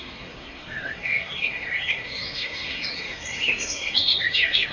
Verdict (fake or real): fake